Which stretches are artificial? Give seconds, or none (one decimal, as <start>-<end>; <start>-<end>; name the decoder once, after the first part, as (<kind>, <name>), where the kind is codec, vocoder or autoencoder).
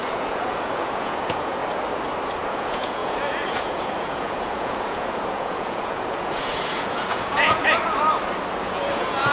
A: 0.0-1.6 (vocoder, Vocos); 2.3-7.6; 8.6-9.3